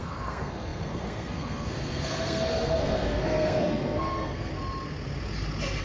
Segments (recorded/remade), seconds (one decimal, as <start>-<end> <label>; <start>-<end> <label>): 0.0-4.5 remade; 4.5-5.8 recorded